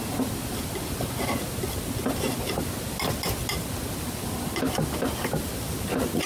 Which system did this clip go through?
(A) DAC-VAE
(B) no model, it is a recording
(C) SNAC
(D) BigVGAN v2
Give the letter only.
B